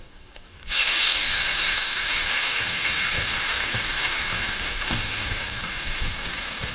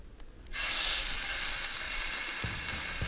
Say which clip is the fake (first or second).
first